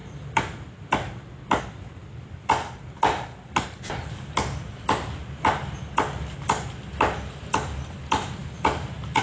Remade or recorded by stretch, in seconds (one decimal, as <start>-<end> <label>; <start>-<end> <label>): 0.0-1.6 remade; 1.6-2.0 recorded; 2.0-2.7 remade; 2.7-5.2 recorded; 5.2-7.2 remade; 7.2-9.2 recorded

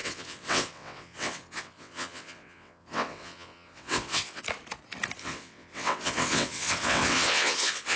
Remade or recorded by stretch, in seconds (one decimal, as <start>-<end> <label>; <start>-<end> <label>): 0.0-4.4 remade; 4.4-5.2 recorded; 5.2-8.0 remade